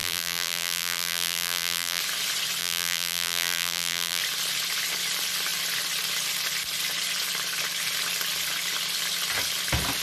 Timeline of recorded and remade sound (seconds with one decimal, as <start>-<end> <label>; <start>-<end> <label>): 0.0-2.0 remade; 2.0-2.6 recorded; 2.6-4.2 remade; 4.2-10.0 recorded